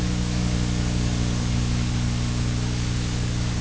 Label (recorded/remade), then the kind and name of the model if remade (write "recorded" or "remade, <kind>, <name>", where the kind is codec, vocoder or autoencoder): remade, codec, DAC